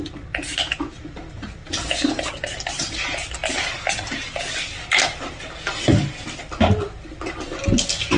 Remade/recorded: recorded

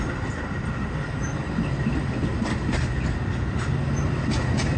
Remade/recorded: recorded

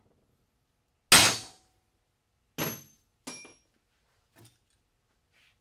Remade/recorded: recorded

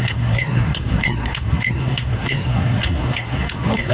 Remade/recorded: remade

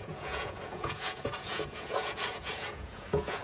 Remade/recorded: remade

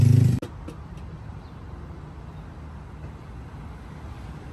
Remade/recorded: recorded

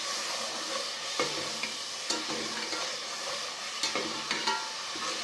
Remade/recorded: recorded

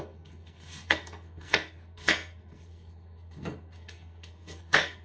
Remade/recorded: remade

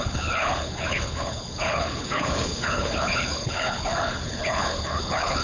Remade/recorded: remade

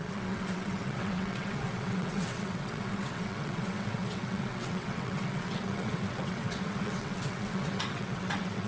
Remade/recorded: remade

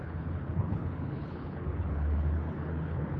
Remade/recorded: remade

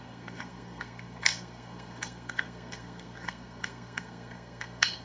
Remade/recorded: remade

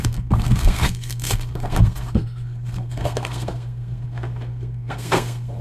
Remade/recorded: remade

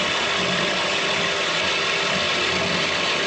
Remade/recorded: recorded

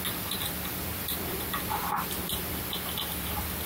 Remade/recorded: remade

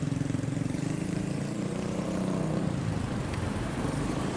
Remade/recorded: remade